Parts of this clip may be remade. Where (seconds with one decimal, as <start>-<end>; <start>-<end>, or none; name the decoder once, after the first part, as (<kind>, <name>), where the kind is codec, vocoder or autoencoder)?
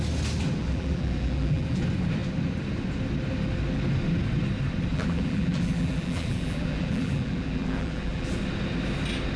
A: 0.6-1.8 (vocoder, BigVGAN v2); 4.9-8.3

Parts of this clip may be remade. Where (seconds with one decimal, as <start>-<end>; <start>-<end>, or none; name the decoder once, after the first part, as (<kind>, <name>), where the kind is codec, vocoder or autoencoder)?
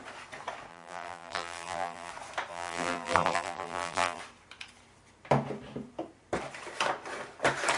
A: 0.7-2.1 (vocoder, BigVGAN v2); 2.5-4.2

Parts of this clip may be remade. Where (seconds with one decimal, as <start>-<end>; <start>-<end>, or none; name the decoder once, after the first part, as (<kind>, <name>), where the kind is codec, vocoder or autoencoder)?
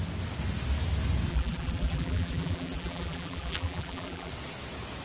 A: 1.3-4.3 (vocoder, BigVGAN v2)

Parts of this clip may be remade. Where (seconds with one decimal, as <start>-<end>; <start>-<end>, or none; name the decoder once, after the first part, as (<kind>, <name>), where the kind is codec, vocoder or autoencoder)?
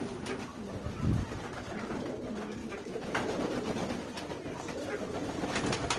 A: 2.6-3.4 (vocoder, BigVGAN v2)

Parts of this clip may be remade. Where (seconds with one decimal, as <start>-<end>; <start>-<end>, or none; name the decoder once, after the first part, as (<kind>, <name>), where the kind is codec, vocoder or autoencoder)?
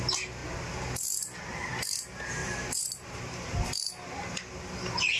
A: 2.4-3.7 (vocoder, BigVGAN v2)